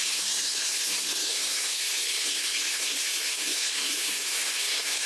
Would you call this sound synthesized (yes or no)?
yes